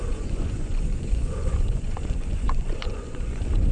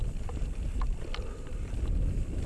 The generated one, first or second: first